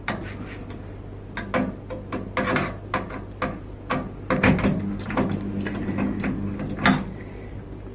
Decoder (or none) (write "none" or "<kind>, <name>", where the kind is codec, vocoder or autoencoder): none